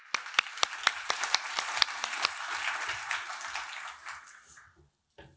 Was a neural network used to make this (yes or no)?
no